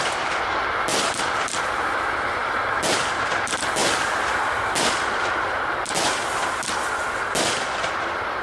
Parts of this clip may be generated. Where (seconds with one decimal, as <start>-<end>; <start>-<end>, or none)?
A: 0.0-0.9; 1.6-2.4; 2.9-8.4